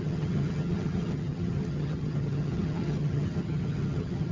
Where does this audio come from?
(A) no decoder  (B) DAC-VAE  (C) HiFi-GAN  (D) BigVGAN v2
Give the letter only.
C